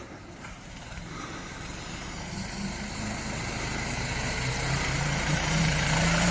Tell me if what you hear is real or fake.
fake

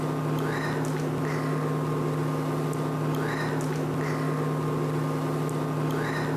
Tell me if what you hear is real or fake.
real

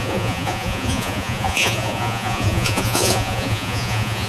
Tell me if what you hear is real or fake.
fake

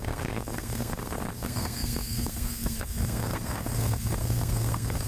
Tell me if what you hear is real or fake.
fake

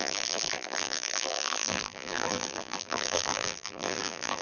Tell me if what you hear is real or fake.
fake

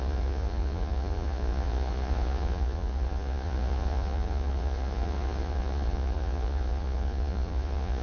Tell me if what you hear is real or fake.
fake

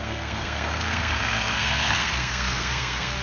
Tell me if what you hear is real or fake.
fake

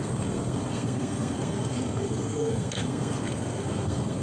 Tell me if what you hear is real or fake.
fake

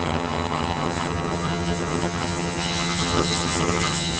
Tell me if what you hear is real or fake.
fake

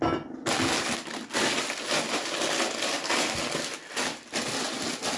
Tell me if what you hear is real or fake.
real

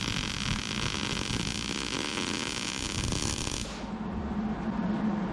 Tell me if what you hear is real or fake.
real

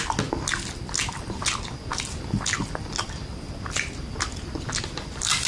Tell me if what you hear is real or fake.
real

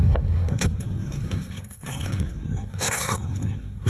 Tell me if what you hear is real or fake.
fake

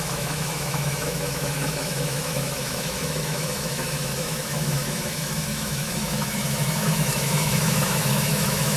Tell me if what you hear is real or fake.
fake